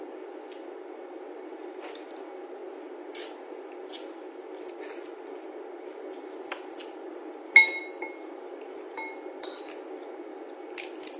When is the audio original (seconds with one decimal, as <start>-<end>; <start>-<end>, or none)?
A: 0.0-11.2